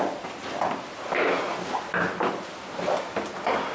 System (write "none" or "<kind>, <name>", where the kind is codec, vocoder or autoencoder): none